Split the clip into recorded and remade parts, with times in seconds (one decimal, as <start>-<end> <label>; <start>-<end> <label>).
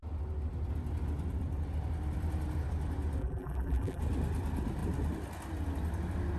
0.0-3.2 recorded; 3.2-4.0 remade; 4.0-6.4 recorded